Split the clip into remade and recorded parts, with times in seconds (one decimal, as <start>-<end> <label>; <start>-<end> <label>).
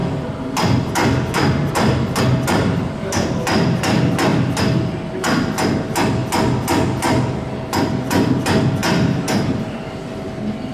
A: 0.0-8.8 recorded; 8.8-9.7 remade; 9.7-10.7 recorded